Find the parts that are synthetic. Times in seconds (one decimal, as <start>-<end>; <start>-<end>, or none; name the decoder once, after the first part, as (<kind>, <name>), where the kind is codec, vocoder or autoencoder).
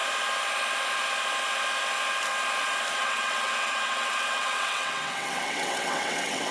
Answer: 2.9-6.5 (vocoder, WaveNeXt)